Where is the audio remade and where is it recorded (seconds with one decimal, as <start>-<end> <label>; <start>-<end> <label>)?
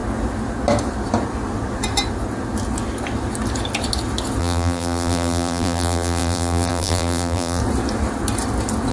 0.0-4.4 recorded; 4.4-7.6 remade; 7.6-8.9 recorded